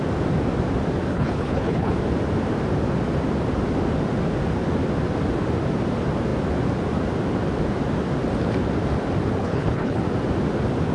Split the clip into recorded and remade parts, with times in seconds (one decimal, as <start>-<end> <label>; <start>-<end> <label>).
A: 0.0-1.1 recorded; 1.1-1.9 remade; 1.9-9.4 recorded; 9.4-10.0 remade; 10.0-10.9 recorded